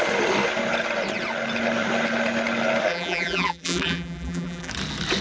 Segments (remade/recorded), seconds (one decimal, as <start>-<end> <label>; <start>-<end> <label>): 0.0-2.9 recorded; 2.9-4.7 remade; 4.7-5.2 recorded